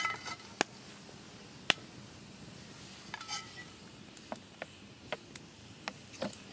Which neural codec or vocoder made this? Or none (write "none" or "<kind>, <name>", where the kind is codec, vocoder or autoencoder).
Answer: none